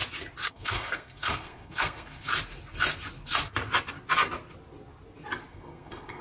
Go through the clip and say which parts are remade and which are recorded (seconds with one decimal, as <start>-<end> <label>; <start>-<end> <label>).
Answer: 0.0-0.5 recorded; 0.5-2.3 remade; 2.3-5.5 recorded; 5.5-6.2 remade